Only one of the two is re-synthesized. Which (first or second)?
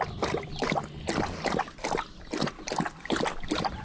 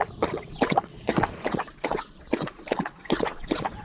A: second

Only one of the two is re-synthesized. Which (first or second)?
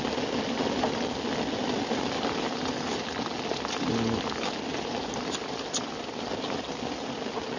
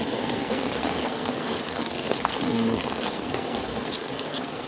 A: second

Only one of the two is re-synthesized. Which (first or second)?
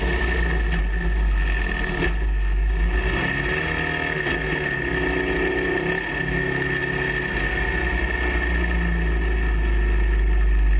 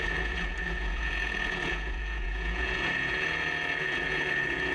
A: second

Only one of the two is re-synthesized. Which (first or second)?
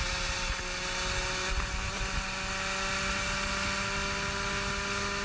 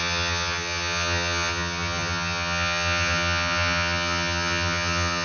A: second